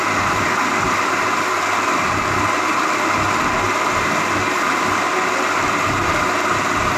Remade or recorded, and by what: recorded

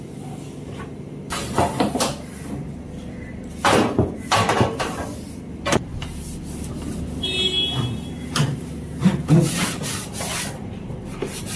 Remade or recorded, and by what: recorded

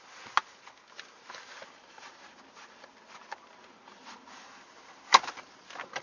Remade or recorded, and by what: recorded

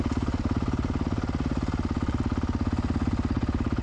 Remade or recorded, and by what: recorded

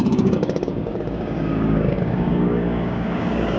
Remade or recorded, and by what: remade, codec, DAC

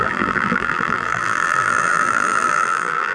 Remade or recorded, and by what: remade, vocoder, BigVGAN v2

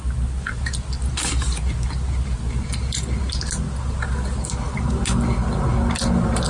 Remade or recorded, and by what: recorded